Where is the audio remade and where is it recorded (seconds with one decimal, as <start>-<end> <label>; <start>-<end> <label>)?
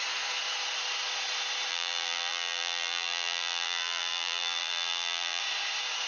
0.0-1.7 recorded; 1.7-5.4 remade; 5.4-6.1 recorded